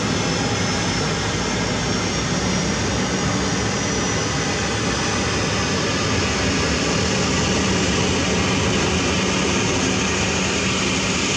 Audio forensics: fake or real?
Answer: real